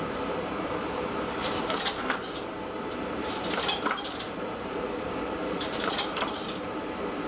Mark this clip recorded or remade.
remade